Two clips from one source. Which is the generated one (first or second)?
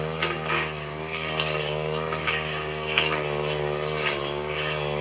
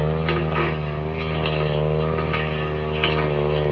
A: first